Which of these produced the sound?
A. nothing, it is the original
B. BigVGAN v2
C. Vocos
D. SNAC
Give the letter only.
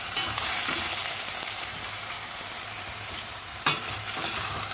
B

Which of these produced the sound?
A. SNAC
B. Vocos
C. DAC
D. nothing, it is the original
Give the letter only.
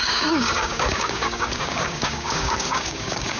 C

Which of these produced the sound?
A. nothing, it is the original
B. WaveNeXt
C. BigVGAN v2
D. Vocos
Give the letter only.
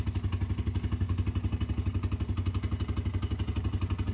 A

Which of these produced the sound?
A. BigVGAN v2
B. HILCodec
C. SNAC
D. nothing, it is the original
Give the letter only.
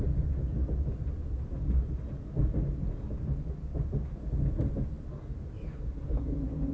D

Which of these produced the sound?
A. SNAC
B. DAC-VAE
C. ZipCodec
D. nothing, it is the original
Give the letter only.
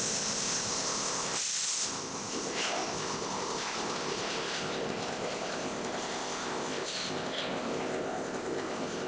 C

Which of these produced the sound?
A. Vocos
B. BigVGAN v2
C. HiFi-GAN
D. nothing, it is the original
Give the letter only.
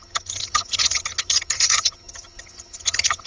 C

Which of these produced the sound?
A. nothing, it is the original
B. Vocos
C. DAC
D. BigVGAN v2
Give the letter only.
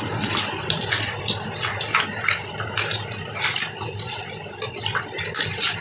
A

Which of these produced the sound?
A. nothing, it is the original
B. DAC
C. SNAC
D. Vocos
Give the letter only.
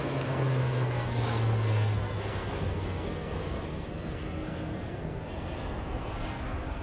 C